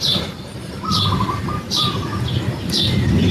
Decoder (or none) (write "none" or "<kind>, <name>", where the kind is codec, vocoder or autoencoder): vocoder, BigVGAN v2